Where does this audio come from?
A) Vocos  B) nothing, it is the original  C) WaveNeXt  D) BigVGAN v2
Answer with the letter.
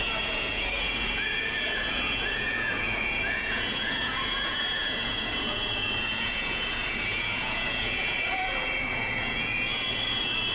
A